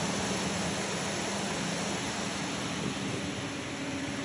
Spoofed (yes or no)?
no